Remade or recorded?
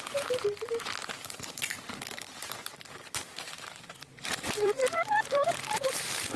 remade